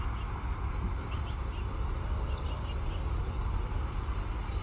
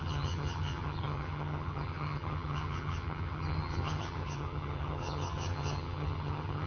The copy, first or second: second